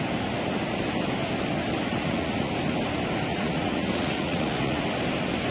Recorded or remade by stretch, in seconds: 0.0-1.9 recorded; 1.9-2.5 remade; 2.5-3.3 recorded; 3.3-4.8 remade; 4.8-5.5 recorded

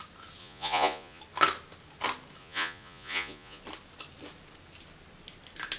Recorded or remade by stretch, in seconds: 0.0-0.4 recorded; 0.4-1.2 remade; 1.2-2.4 recorded; 2.4-3.6 remade; 3.6-5.8 recorded

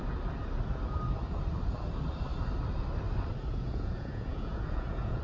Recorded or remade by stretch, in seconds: 0.0-3.5 recorded; 3.5-5.2 remade

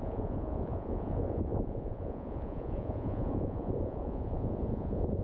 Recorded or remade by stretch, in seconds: 0.0-5.2 remade